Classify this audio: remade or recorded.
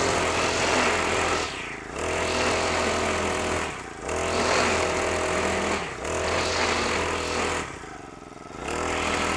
recorded